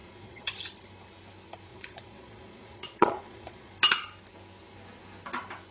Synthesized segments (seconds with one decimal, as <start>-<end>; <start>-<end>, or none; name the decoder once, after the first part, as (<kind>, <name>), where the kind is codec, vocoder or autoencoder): 0.0-0.5 (vocoder, Vocos); 1.7-3.7